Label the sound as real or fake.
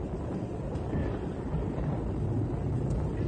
real